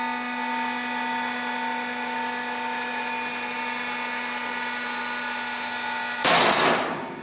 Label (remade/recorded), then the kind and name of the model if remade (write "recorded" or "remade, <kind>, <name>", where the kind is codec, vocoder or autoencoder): recorded